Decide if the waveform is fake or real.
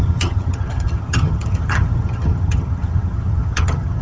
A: fake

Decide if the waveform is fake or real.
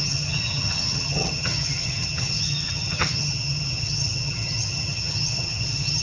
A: fake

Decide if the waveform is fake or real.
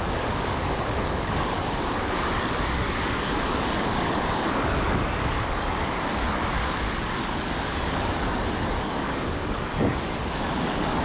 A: fake